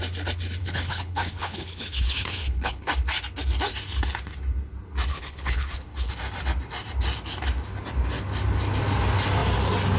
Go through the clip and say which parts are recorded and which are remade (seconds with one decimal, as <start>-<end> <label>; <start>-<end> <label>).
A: 0.0-0.6 recorded; 0.6-2.9 remade; 2.9-5.1 recorded; 5.1-6.1 remade; 6.1-10.0 recorded